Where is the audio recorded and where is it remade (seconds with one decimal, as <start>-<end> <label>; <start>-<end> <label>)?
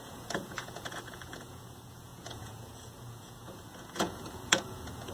0.0-5.1 remade